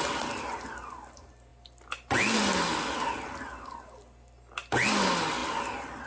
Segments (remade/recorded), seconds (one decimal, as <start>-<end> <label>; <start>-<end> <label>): 0.0-6.1 recorded